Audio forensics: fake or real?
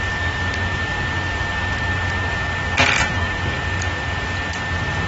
real